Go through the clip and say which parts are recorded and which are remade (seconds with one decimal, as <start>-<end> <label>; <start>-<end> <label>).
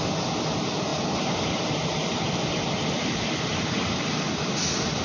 0.0-5.0 recorded